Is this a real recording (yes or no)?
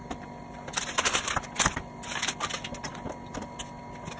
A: yes